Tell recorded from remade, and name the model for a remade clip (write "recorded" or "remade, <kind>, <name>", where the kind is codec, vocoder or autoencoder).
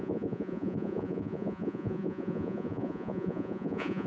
remade, vocoder, Vocos